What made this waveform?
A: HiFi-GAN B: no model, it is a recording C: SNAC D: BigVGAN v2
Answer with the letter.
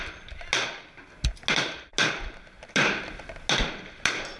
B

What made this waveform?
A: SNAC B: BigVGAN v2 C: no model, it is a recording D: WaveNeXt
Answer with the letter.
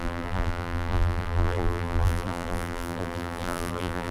B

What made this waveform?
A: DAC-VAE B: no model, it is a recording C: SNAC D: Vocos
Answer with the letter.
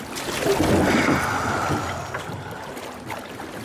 B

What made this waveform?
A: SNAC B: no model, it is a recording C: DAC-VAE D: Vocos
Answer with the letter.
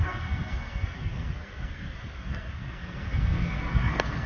A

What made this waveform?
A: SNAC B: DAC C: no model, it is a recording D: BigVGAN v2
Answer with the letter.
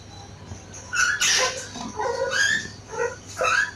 C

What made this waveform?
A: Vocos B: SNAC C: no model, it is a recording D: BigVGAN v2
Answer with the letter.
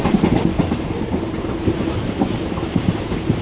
C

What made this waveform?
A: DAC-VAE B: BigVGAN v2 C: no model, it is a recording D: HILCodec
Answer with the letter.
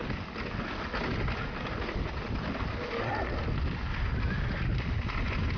C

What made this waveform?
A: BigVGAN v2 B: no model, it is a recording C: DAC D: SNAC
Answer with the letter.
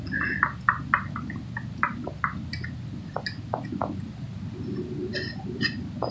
B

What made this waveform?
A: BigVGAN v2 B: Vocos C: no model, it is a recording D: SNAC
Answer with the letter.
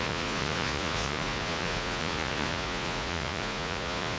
B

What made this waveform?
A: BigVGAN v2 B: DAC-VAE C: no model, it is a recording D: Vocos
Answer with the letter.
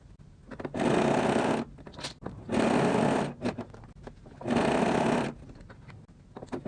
C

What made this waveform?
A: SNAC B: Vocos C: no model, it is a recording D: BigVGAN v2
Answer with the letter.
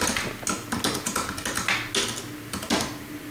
C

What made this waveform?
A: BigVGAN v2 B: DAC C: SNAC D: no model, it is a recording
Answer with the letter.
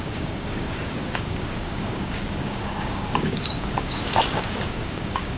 B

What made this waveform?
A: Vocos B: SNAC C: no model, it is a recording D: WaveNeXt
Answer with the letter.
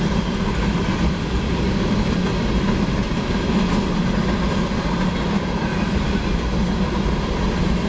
C